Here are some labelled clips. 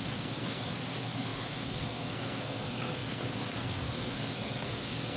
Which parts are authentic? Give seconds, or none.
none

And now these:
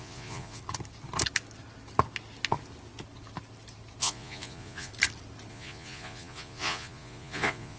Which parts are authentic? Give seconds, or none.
0.6-4.0; 4.9-5.5